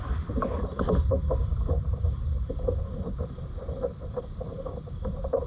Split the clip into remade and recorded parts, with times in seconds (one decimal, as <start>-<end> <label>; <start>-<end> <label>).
0.0-1.5 remade; 1.5-2.4 recorded; 2.4-5.5 remade